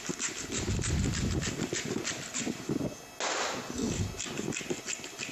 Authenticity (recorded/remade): recorded